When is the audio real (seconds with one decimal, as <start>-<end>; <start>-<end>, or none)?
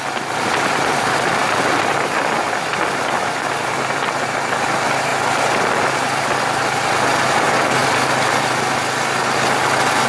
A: 0.0-10.1